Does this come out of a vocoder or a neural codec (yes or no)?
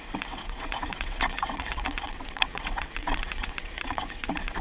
yes